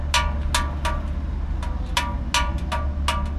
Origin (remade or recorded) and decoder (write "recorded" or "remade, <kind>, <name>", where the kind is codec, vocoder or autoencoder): recorded